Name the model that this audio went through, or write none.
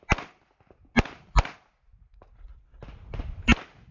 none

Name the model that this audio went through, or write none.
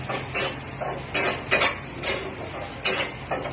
none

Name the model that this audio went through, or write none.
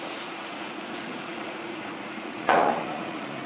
vocoder, Vocos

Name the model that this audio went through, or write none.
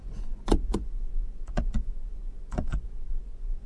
vocoder, Vocos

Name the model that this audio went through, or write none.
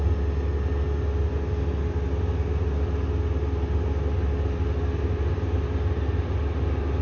none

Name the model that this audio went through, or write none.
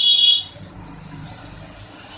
none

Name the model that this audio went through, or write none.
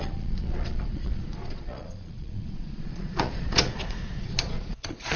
vocoder, Vocos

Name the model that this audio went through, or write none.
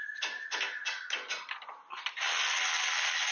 none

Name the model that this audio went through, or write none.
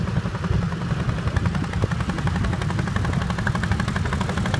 none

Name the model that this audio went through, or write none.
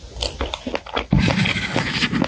none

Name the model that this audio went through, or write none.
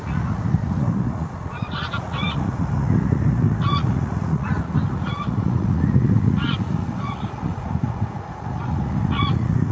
vocoder, Vocos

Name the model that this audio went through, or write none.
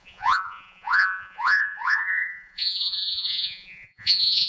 vocoder, Vocos